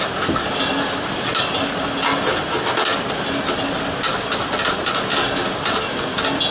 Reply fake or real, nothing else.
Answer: real